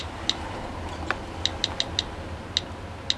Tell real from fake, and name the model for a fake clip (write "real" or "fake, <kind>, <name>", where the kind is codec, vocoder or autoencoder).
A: real